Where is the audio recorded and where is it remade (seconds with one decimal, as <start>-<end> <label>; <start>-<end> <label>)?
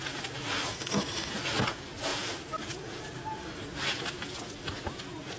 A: 0.0-0.7 recorded; 0.7-1.3 remade; 1.3-5.4 recorded